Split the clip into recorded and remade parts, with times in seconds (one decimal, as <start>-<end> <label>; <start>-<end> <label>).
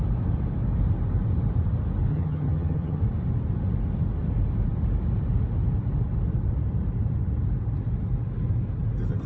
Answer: 0.0-2.1 recorded; 2.1-3.0 remade; 3.0-9.3 recorded